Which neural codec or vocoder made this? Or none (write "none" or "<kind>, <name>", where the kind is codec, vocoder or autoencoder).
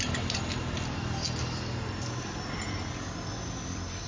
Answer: none